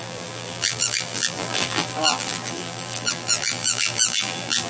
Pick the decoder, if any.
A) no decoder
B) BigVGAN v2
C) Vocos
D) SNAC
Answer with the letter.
B